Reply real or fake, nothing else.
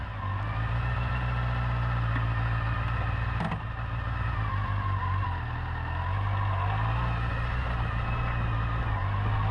real